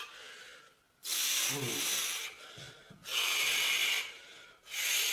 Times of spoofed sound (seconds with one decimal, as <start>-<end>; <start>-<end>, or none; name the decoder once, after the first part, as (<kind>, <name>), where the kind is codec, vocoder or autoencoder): 0.0-5.1 (vocoder, BigVGAN v2)